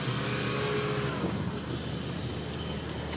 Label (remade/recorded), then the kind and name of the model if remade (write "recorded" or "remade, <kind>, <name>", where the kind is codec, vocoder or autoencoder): recorded